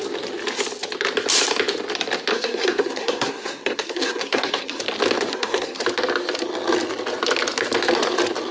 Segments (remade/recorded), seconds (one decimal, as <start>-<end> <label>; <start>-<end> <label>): 0.0-2.3 recorded; 2.3-4.8 remade; 4.8-5.3 recorded; 5.3-5.8 remade; 5.8-8.5 recorded